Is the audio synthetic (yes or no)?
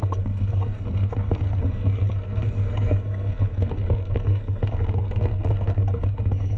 yes